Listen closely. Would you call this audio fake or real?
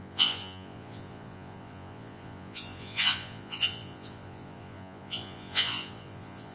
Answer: fake